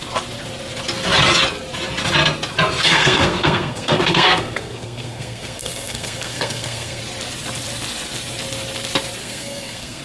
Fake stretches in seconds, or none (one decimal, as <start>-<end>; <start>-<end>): 2.8-7.0; 9.2-10.0